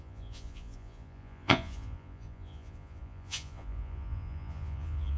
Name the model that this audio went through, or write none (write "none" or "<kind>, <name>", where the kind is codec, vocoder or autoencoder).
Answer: vocoder, Vocos